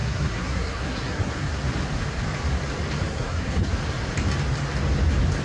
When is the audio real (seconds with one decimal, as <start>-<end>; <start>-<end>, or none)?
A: 1.5-3.1; 3.7-5.4